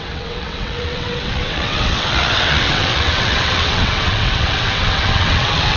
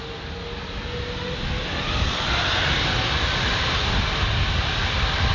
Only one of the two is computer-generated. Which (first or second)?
first